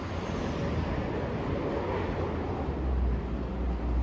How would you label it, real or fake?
real